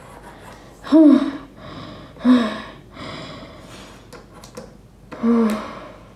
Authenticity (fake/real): real